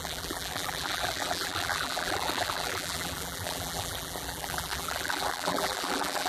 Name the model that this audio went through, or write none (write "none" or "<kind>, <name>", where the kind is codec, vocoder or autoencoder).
vocoder, BigVGAN v2